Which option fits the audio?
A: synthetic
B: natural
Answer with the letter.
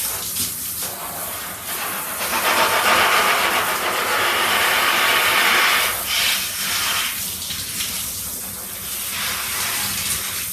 B